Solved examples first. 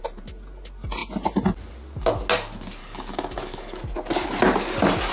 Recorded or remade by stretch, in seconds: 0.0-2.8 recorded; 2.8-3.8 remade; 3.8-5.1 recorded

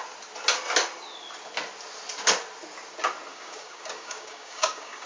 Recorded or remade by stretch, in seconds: 0.0-3.3 recorded; 3.3-5.1 remade

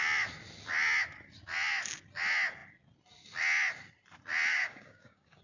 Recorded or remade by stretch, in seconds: 0.0-4.5 recorded; 4.5-5.4 remade

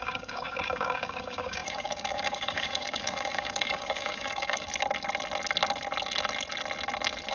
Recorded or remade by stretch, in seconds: 0.0-4.7 remade; 4.7-7.3 recorded

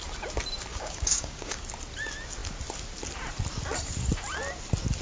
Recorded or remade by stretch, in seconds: 0.0-0.7 recorded; 0.7-1.6 remade; 1.6-5.0 recorded

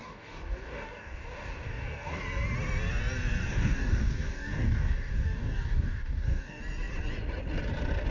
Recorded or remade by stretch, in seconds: 0.0-2.2 remade; 2.2-3.4 recorded; 3.4-6.6 remade; 6.6-8.1 recorded